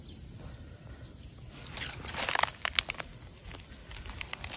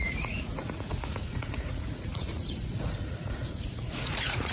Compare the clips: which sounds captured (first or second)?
first